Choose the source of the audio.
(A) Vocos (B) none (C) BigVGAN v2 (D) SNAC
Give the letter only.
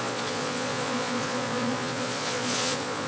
A